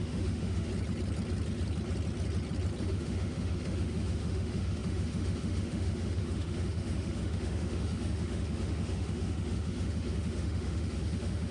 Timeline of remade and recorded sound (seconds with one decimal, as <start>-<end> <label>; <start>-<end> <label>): 0.0-0.7 remade; 0.7-2.8 recorded; 2.8-11.5 remade